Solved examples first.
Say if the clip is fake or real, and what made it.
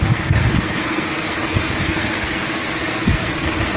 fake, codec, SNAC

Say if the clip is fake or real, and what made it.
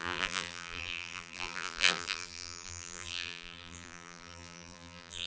fake, vocoder, BigVGAN v2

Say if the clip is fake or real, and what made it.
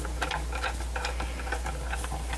real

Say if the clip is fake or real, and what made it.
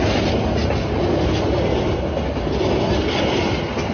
real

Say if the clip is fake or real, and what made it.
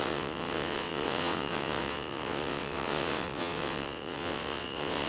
fake, vocoder, WaveNeXt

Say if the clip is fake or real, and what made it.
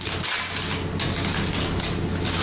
real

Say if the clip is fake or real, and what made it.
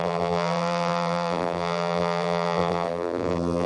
fake, vocoder, BigVGAN v2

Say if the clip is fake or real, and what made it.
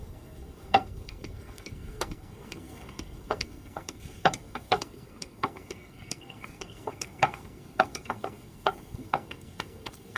fake, codec, SNAC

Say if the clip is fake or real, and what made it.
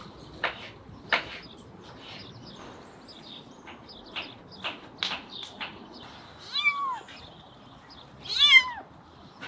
real